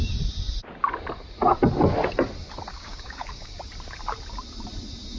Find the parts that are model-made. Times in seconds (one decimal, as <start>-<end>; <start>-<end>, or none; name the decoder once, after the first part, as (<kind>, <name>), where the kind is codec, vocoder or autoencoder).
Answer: 2.7-3.6 (codec, DAC)